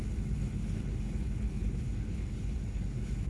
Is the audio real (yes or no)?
no